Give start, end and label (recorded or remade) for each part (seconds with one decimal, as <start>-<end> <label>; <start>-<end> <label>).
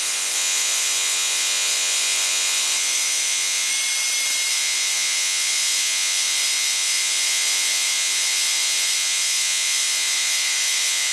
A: 0.0-3.7 remade; 3.7-4.5 recorded; 4.5-11.1 remade